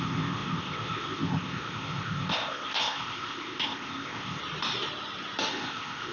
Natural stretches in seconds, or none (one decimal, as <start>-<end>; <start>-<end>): 4.4-5.5